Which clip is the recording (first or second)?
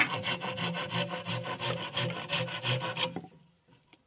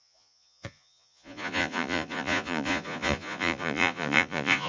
first